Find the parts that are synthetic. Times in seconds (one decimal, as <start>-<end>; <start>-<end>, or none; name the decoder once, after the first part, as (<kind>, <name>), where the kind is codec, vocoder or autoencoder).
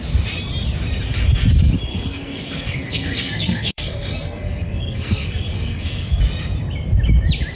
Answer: 1.9-6.2 (codec, SNAC)